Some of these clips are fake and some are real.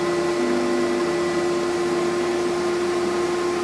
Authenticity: real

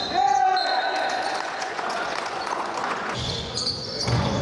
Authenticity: fake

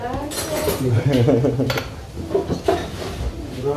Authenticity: real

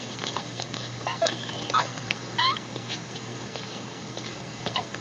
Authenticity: fake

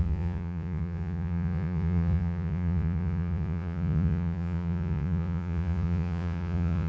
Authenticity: fake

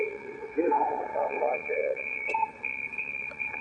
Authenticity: fake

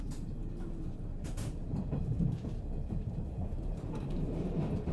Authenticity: fake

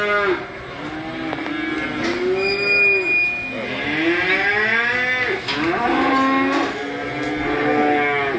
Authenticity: real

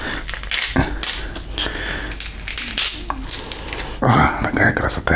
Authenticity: real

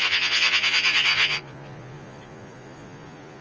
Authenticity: fake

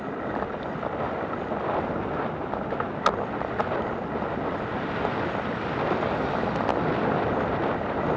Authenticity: real